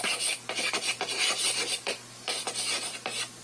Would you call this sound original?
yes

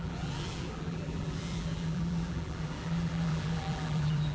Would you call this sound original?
no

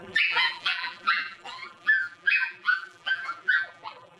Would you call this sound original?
no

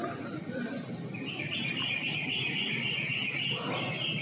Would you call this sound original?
yes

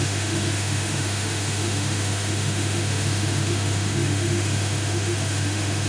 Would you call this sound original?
no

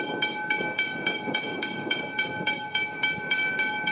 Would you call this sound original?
no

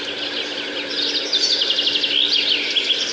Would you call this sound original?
yes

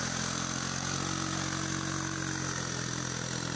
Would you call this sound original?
yes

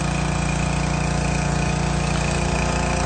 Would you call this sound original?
yes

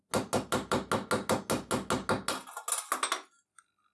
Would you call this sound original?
yes